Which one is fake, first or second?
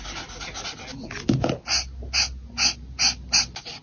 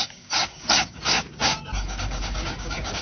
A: second